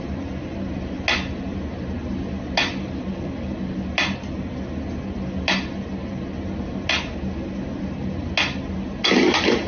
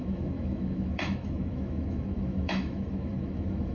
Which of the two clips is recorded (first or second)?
first